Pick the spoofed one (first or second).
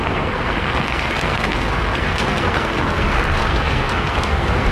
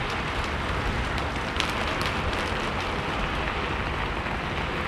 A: first